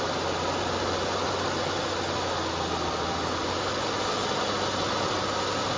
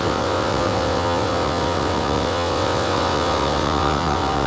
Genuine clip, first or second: first